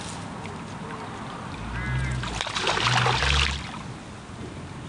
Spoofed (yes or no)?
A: no